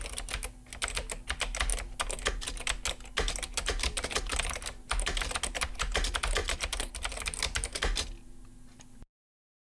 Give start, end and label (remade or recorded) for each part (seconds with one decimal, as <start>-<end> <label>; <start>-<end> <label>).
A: 0.0-6.4 recorded; 6.4-7.1 remade; 7.1-9.8 recorded